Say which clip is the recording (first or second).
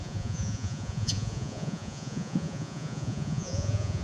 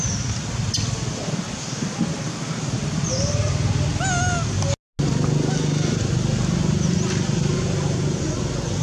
second